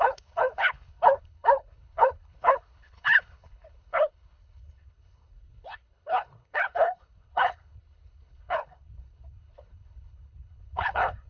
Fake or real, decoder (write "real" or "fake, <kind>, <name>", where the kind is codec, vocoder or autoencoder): fake, codec, HILCodec